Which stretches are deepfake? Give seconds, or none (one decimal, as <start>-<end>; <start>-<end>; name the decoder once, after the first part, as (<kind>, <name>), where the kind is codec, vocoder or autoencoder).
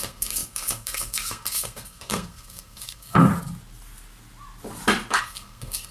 0.0-3.3 (codec, SNAC); 5.2-5.9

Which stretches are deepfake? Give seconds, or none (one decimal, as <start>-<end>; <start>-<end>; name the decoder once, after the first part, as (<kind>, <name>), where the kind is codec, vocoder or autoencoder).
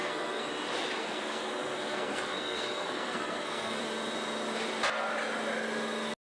0.0-0.5 (codec, SNAC); 1.0-3.8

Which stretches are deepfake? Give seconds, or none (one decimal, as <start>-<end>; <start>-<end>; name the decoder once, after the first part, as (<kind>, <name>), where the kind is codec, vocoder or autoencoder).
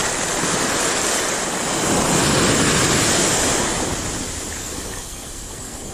4.6-5.9 (codec, SNAC)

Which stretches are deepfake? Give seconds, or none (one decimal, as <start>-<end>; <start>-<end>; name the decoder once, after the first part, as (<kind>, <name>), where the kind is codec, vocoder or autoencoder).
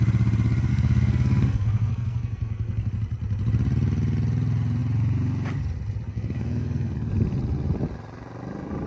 0.7-2.9 (codec, SNAC); 6.1-7.1